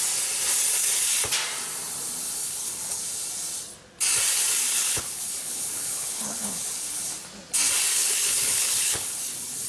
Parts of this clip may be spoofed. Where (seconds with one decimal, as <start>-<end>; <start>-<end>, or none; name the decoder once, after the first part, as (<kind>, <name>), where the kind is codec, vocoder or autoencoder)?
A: 2.4-3.0 (codec, HILCodec); 4.6-7.1; 8.0-9.2